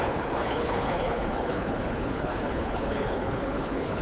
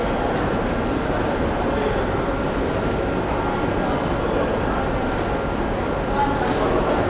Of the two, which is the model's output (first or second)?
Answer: first